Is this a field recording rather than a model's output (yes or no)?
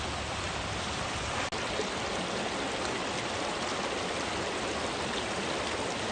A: yes